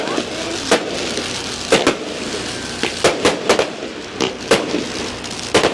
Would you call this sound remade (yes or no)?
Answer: no